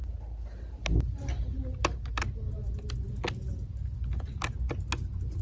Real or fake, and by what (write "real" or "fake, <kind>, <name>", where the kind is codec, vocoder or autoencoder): real